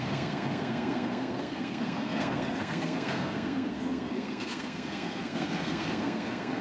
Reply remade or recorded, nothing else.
remade